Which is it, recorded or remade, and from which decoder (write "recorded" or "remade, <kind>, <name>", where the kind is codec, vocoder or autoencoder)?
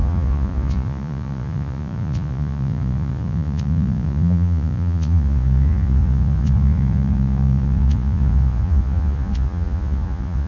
remade, vocoder, Vocos